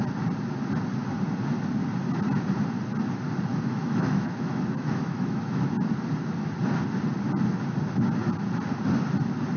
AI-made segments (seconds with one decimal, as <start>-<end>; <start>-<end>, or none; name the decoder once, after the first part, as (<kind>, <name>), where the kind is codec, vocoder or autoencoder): 3.5-5.7 (autoencoder, DAC-VAE)